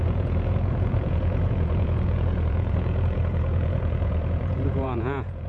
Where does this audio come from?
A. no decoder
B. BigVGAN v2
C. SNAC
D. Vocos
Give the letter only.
D